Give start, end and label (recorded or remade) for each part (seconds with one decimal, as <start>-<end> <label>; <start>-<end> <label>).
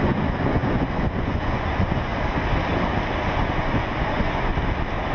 0.0-2.1 remade; 2.1-3.3 recorded; 3.3-4.5 remade; 4.5-5.1 recorded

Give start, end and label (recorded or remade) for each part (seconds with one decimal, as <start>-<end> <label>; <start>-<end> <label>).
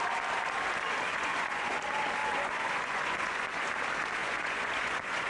0.0-1.1 recorded; 1.1-1.8 remade; 1.8-2.2 recorded; 2.2-3.7 remade; 3.7-4.2 recorded; 4.2-5.3 remade